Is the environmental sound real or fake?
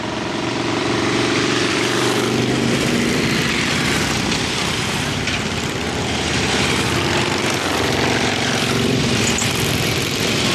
fake